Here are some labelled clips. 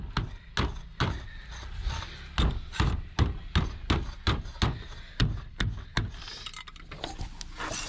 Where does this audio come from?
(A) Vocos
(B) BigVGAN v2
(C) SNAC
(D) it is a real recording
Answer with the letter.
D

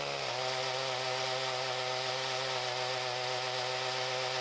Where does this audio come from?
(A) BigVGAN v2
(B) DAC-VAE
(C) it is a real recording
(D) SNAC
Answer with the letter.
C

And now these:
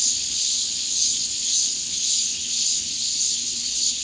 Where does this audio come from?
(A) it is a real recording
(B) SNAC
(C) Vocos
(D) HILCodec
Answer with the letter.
D